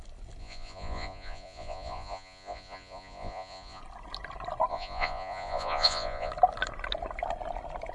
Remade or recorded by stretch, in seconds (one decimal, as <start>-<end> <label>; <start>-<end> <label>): 0.0-0.4 recorded; 0.4-3.8 remade; 3.8-4.7 recorded; 4.7-6.3 remade; 6.3-7.9 recorded